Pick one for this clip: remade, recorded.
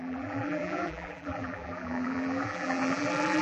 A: remade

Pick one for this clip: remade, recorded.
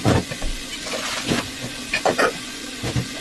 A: remade